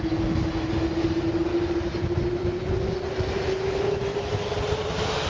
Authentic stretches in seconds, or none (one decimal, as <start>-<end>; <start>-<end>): 0.0-5.3